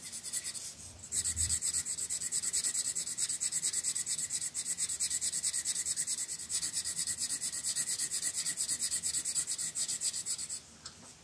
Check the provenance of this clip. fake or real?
fake